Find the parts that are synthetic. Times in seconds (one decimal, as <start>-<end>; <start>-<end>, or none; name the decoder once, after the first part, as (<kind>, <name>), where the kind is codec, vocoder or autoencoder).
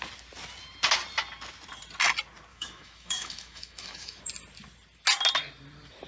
2.5-4.2 (autoencoder, DAC-VAE)